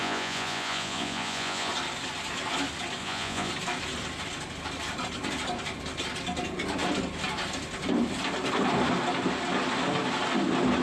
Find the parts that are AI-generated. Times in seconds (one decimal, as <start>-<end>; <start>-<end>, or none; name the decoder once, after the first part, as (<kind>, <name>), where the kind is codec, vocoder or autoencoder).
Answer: 0.0-1.7 (vocoder, Vocos); 3.0-3.5